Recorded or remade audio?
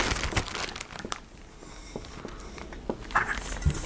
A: recorded